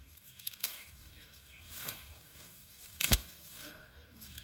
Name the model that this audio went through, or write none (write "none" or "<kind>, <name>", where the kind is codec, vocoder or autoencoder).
codec, DAC